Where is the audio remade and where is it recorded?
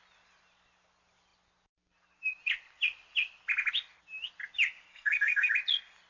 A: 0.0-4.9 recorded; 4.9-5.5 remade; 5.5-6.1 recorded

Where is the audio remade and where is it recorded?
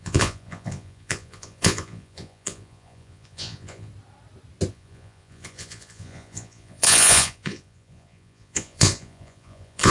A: 0.0-3.9 remade; 3.9-4.7 recorded; 4.7-9.9 remade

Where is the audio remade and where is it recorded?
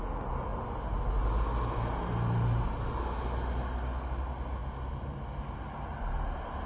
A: 0.0-6.7 recorded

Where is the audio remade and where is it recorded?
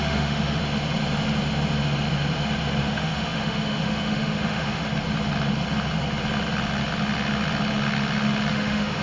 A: 0.0-0.6 remade; 0.6-2.8 recorded; 2.8-4.8 remade; 4.8-8.5 recorded; 8.5-9.0 remade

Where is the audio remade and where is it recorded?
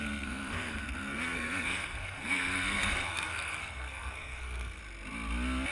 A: 0.0-4.8 remade; 4.8-5.7 recorded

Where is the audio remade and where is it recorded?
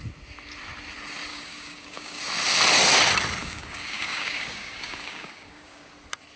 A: 0.0-1.3 recorded; 1.3-2.2 remade; 2.2-3.4 recorded; 3.4-5.9 remade; 5.9-6.4 recorded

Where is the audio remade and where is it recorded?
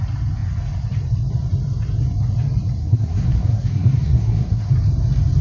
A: 0.0-2.8 recorded; 2.8-4.7 remade; 4.7-5.4 recorded